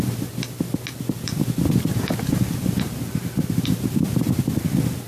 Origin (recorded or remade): recorded